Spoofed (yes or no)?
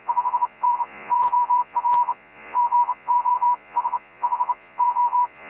yes